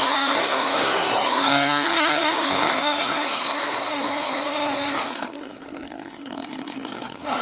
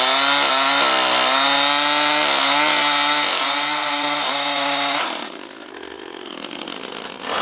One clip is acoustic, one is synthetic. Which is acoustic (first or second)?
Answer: second